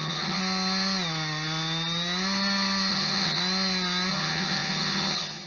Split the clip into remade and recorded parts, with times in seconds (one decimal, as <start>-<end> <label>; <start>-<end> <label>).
0.0-0.4 remade; 0.4-2.9 recorded; 2.9-3.4 remade; 3.4-4.1 recorded; 4.1-5.5 remade